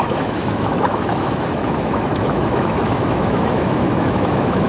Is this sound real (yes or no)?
no